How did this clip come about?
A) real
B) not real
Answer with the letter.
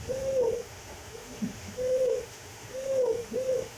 B